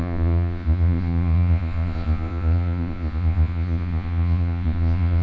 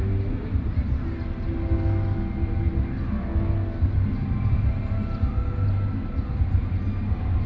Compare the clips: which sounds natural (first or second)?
second